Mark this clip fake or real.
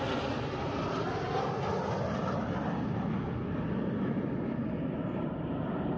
real